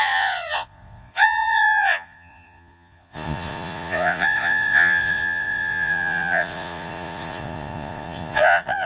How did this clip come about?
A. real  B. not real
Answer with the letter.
B